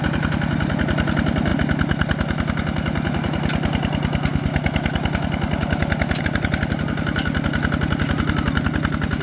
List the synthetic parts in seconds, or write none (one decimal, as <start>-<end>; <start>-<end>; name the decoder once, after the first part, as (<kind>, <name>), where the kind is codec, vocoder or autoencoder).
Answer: none